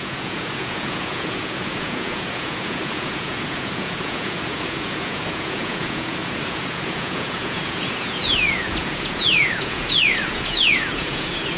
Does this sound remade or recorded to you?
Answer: remade